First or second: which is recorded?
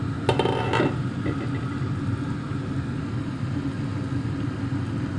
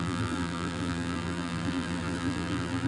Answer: first